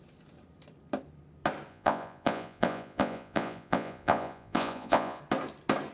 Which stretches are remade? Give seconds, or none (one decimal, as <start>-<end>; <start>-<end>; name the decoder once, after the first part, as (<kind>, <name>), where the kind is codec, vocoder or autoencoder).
1.7-5.2 (vocoder, Vocos)